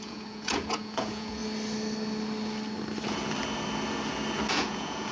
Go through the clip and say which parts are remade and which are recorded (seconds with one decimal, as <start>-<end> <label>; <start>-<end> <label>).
0.0-1.4 remade; 1.4-4.5 recorded; 4.5-5.1 remade